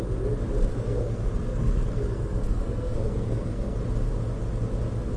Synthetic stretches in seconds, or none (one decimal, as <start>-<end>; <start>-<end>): 0.7-3.8